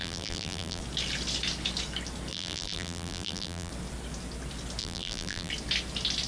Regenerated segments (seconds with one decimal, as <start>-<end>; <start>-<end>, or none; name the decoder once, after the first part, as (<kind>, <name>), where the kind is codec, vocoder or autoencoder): 0.0-0.8 (vocoder, BigVGAN v2); 2.3-3.7; 4.8-5.5